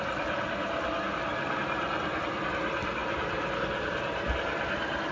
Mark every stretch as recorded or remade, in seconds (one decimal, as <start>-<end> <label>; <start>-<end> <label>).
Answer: 0.0-1.3 recorded; 1.3-2.2 remade; 2.2-5.1 recorded